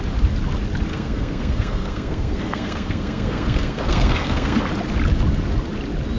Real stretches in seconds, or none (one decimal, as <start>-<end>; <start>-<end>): 0.0-0.9; 4.6-6.2